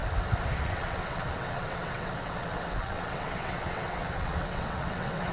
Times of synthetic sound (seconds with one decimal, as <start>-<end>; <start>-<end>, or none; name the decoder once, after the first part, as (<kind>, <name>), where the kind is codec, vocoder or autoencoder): 0.6-5.3 (vocoder, WaveNeXt)